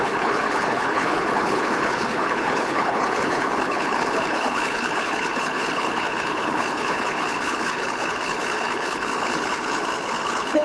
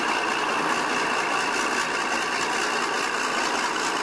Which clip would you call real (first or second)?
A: second